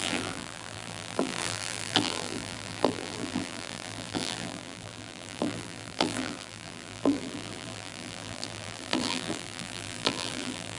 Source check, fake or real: fake